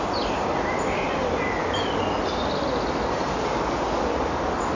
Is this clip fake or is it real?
real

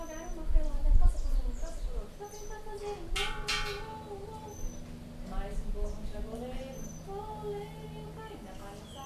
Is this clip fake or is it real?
real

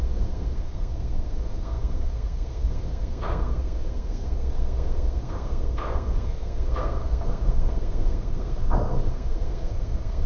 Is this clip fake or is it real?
fake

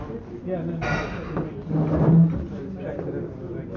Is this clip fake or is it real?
real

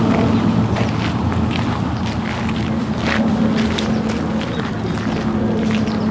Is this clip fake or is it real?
real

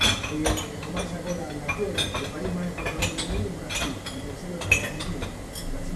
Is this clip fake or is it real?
real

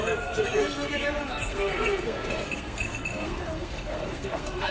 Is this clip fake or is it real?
fake